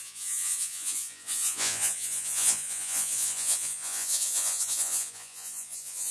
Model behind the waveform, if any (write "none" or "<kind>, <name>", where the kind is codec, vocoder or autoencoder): vocoder, Vocos